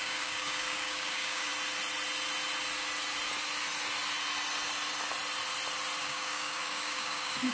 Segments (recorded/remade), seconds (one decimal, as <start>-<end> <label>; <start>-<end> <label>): 0.0-1.5 remade; 1.5-6.0 recorded; 6.0-7.5 remade